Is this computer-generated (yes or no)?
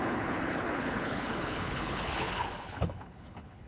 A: yes